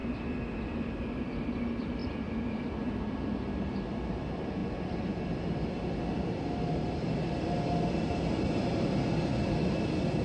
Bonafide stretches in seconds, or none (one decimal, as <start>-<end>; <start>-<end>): 0.0-10.2

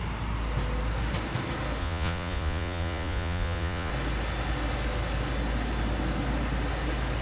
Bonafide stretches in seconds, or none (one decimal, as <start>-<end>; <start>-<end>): 0.0-1.8; 3.9-7.2